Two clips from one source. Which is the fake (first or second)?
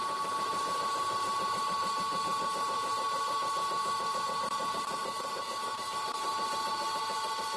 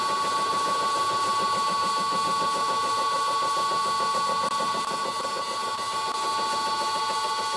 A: first